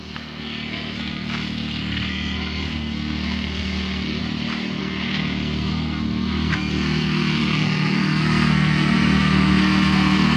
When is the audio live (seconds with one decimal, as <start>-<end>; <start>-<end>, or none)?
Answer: 4.2-4.8